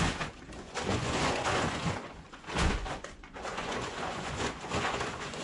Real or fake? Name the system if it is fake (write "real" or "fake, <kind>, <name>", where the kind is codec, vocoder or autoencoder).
fake, vocoder, Vocos